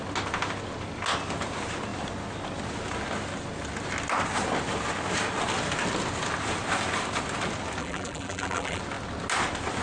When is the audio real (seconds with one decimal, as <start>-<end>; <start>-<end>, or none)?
0.0-7.8; 8.8-9.8